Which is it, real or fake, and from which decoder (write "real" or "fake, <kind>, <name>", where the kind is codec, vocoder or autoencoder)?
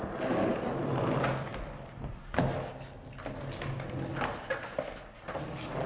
real